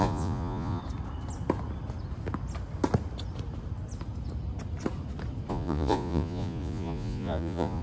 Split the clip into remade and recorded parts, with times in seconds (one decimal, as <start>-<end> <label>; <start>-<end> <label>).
0.0-0.8 remade; 0.8-5.5 recorded; 5.5-7.8 remade